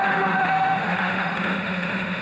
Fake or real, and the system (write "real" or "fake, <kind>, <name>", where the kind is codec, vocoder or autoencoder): fake, autoencoder, DAC-VAE